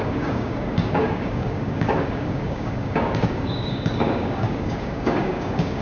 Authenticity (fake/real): fake